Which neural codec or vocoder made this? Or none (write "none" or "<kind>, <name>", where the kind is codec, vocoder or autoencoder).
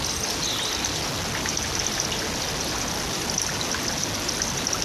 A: none